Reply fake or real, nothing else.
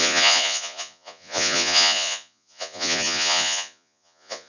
fake